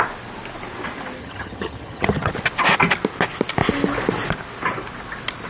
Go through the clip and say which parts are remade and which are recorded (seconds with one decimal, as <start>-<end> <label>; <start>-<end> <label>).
0.0-1.2 recorded; 1.2-2.3 remade; 2.3-5.5 recorded